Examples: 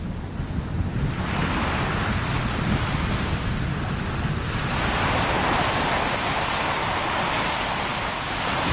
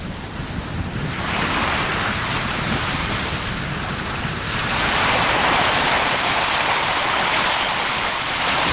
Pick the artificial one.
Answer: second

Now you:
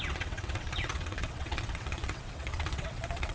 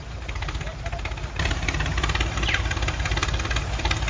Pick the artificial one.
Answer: first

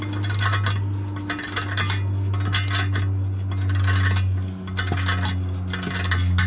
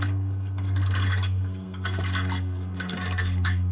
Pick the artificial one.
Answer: second